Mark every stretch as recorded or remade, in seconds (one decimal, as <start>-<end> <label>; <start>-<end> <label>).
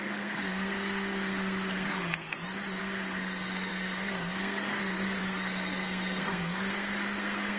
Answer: 0.0-2.3 remade; 2.3-2.8 recorded; 2.8-7.6 remade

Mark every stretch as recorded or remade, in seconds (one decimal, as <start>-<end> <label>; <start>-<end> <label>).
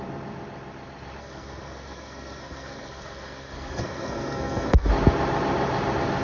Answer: 0.0-1.2 recorded; 1.2-4.9 remade; 4.9-6.2 recorded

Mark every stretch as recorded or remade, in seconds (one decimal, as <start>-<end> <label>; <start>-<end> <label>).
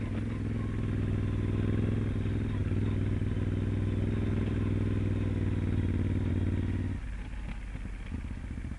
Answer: 0.0-8.8 recorded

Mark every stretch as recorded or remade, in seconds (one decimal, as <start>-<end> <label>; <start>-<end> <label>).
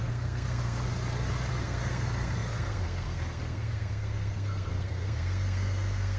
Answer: 0.0-0.9 remade; 0.9-1.5 recorded; 1.5-6.2 remade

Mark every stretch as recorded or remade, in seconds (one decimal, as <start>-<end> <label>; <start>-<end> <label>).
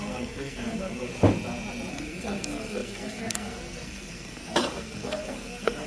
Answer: 0.0-1.1 remade; 1.1-1.9 recorded; 1.9-5.9 remade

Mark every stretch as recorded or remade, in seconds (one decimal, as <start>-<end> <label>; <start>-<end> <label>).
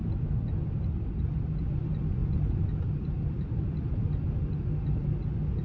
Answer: 0.0-1.2 remade; 1.2-2.2 recorded; 2.2-4.7 remade; 4.7-5.6 recorded